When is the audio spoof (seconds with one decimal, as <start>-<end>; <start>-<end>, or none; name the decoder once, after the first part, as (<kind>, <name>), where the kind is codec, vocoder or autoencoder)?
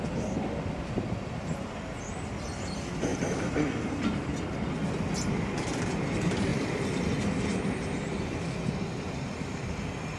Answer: 3.1-4.7 (vocoder, BigVGAN v2); 6.5-7.2